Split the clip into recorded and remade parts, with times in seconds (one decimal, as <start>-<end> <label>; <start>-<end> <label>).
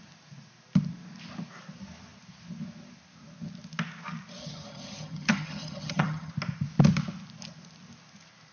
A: 0.0-4.4 recorded; 4.4-6.3 remade; 6.3-8.5 recorded